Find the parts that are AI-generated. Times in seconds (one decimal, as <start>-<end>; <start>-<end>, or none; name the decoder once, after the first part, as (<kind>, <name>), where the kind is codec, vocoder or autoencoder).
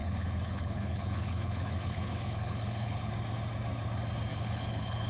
0.0-3.1 (codec, HILCodec); 4.3-5.1